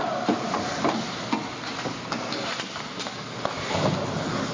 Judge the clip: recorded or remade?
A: recorded